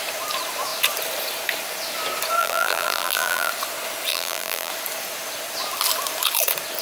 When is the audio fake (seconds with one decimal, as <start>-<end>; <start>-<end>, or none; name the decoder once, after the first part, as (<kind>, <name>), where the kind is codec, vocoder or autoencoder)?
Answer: 2.4-3.5 (vocoder, BigVGAN v2); 4.1-4.7